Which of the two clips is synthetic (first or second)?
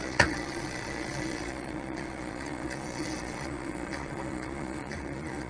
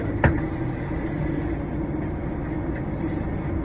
first